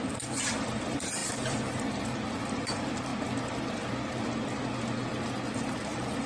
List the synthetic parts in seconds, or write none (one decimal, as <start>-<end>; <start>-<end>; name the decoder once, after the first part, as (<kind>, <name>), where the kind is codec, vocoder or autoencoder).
0.0-3.1 (vocoder, BigVGAN v2); 5.5-6.3